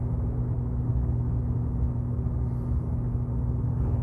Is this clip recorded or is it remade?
recorded